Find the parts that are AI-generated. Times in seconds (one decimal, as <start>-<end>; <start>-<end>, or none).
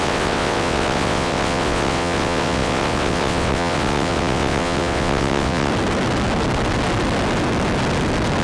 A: 0.0-5.7